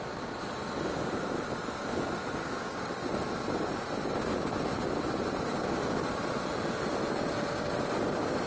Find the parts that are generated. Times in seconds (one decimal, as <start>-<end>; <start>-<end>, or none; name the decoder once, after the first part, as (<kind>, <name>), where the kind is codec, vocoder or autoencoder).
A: 2.4-2.9 (codec, DAC)